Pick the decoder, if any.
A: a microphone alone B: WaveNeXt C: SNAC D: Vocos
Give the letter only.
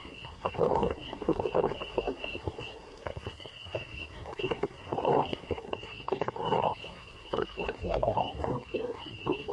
C